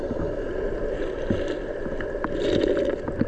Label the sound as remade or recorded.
recorded